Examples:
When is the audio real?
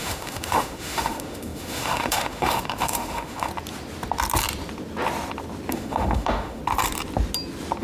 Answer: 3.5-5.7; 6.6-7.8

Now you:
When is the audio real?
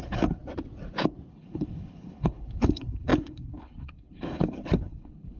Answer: 0.4-1.3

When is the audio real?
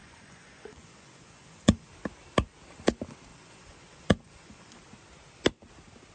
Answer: 1.9-3.3; 4.8-6.1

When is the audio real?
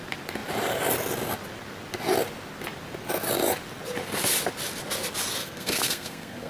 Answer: 0.0-5.4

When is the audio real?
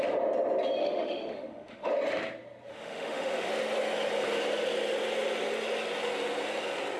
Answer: 0.0-0.8; 1.9-2.7; 3.5-7.0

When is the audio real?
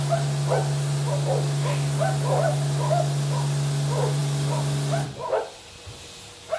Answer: 0.0-6.6